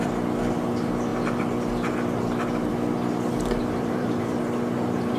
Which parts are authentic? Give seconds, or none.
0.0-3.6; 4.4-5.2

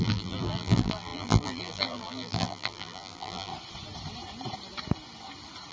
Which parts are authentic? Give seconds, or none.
3.5-5.7

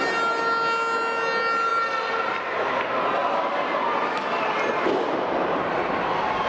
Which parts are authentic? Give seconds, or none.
0.0-6.5

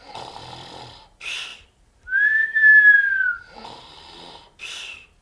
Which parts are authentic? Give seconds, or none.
1.5-4.6

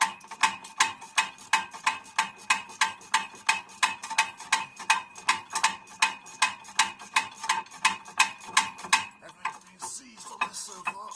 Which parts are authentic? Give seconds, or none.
0.0-11.2

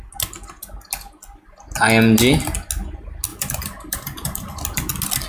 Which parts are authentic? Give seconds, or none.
0.0-3.3; 4.5-5.3

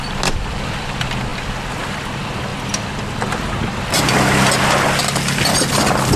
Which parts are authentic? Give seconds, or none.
0.0-6.2

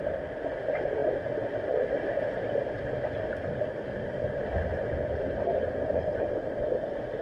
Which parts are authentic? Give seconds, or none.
0.0-4.7; 5.4-7.2